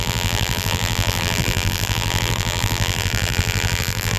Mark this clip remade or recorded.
remade